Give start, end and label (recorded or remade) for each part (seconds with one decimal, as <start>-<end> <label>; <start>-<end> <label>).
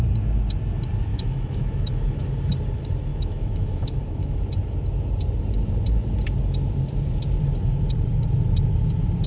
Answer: 0.0-1.1 recorded; 1.1-2.3 remade; 2.3-3.1 recorded; 3.1-4.5 remade; 4.5-9.3 recorded